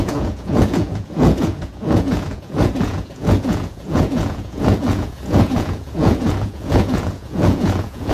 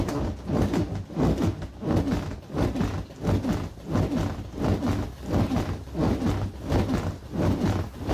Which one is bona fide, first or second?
second